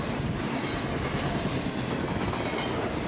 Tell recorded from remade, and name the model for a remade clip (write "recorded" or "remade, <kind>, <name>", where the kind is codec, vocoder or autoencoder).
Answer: recorded